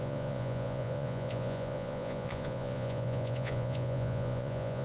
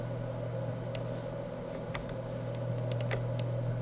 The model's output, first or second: first